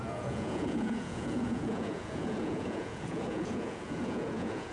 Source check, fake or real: fake